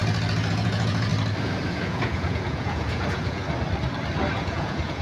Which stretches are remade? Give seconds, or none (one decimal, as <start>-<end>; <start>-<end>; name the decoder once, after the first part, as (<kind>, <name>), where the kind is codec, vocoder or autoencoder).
0.5-1.1 (vocoder, Vocos); 1.7-3.4; 4.3-5.0